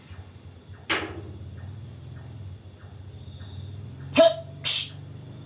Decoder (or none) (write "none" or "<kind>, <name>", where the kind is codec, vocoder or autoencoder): none